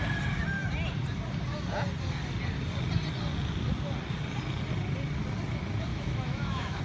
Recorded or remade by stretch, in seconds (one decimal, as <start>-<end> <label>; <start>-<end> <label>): 0.0-5.9 recorded; 5.9-6.8 remade